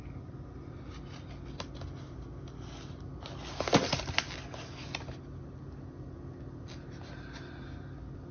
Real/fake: real